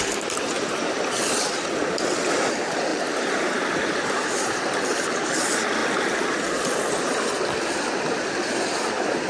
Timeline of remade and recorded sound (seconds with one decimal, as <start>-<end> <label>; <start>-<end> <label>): 0.0-0.9 remade; 0.9-2.9 recorded; 2.9-4.6 remade; 4.6-9.3 recorded